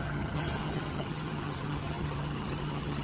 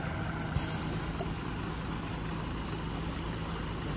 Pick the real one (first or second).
second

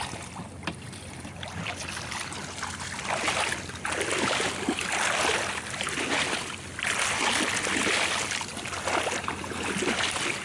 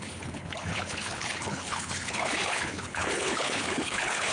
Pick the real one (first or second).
first